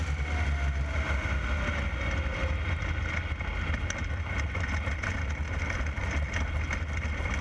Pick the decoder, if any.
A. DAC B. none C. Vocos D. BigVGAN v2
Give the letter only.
B